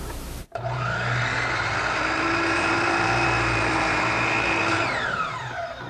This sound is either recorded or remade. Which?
remade